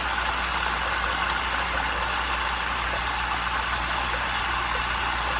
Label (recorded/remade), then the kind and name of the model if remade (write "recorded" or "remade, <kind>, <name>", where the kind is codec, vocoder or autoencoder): recorded